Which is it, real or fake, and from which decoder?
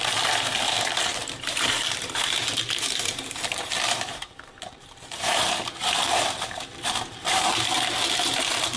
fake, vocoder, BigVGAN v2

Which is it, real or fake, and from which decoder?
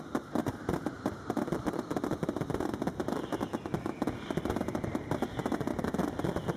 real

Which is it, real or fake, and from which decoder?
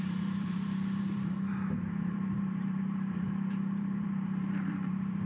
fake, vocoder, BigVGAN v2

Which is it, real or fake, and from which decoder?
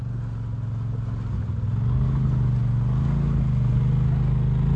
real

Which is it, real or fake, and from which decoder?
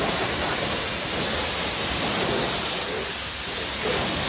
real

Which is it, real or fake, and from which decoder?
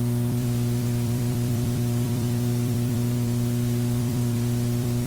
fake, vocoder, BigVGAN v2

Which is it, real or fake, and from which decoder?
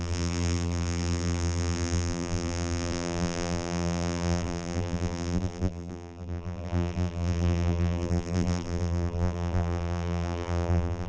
fake, vocoder, BigVGAN v2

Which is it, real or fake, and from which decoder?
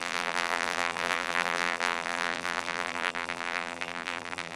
fake, vocoder, BigVGAN v2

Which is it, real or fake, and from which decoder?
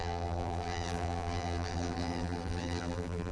fake, vocoder, BigVGAN v2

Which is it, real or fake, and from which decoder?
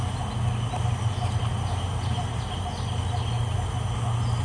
real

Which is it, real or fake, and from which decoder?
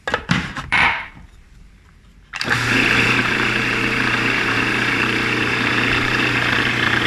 fake, vocoder, BigVGAN v2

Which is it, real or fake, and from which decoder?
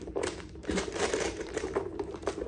fake, vocoder, BigVGAN v2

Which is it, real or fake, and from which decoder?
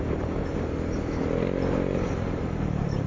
fake, vocoder, BigVGAN v2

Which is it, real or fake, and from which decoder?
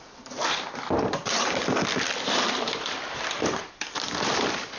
fake, vocoder, BigVGAN v2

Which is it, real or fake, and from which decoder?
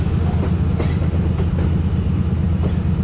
real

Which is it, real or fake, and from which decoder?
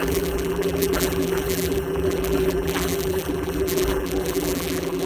fake, vocoder, BigVGAN v2